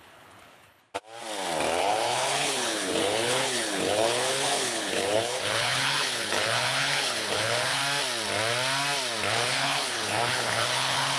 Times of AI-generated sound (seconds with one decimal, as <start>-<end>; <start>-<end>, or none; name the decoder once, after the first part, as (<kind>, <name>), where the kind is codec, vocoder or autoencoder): 0.0-0.8 (codec, HILCodec); 1.8-7.8; 9.3-11.2